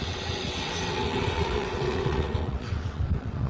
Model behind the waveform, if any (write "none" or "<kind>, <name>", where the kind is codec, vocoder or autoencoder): vocoder, WaveNeXt